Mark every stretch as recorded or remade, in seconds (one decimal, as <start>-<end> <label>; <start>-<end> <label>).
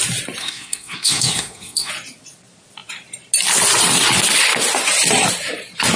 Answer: 0.0-0.4 recorded; 0.4-1.9 remade; 1.9-6.0 recorded